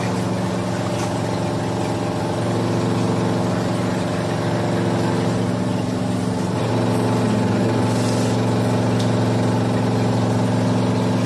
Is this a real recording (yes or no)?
yes